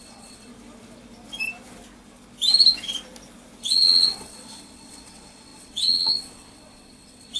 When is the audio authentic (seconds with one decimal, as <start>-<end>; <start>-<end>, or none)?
0.5-3.6